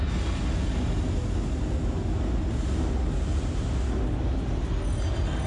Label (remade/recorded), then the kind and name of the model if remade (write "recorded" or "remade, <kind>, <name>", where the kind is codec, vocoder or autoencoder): recorded